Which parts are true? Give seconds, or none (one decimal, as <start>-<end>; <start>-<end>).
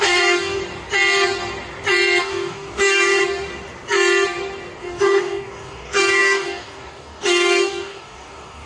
0.6-2.2; 3.2-4.8